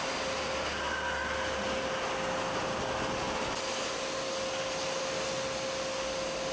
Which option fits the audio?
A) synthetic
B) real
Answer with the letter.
B